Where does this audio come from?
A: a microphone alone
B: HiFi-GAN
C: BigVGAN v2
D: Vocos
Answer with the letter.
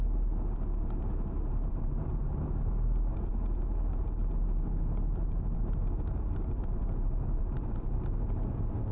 A